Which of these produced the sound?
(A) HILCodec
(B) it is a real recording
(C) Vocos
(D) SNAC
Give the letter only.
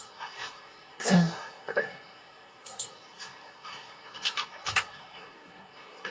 D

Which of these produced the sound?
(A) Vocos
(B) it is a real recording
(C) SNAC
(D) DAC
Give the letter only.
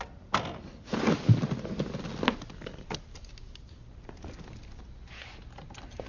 B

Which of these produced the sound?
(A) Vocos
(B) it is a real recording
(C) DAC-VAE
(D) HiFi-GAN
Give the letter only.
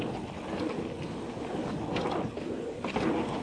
B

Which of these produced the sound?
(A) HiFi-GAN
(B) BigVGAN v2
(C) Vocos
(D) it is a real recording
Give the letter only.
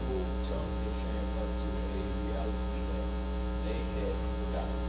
C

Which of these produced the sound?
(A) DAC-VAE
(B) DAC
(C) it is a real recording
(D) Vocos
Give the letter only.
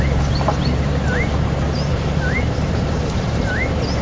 C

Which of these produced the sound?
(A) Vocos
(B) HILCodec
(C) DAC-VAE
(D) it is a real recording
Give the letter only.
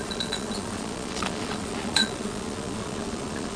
A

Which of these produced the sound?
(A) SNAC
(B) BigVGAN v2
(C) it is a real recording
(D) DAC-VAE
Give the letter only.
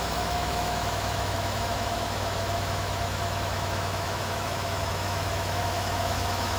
D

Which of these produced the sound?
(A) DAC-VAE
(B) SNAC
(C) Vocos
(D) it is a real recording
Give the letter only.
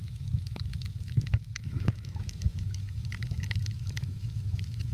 A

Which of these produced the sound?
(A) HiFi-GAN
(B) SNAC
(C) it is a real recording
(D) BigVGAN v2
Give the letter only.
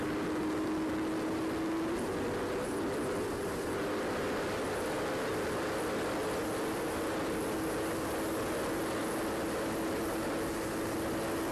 C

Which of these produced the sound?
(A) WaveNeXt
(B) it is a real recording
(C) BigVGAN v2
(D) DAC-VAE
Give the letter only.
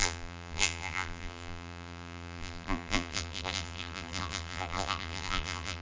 C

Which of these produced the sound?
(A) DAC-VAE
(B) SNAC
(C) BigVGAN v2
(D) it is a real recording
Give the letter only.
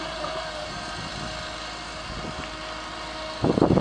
D